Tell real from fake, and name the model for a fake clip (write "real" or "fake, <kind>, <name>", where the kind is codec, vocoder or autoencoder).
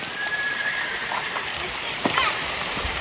fake, vocoder, BigVGAN v2